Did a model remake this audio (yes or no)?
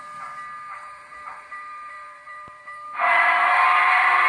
yes